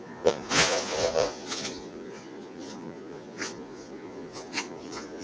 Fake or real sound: fake